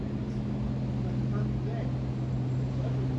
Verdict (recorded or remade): recorded